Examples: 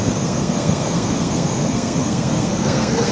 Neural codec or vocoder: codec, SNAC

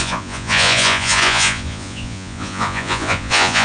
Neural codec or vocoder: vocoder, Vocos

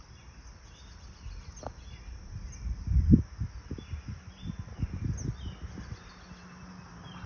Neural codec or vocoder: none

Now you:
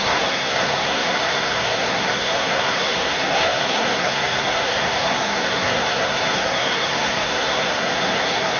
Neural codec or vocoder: codec, SNAC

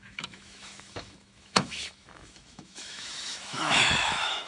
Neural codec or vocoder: autoencoder, DAC-VAE